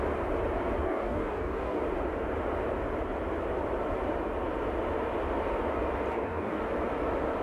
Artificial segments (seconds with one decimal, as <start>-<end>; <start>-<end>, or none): 0.8-1.8; 6.1-6.6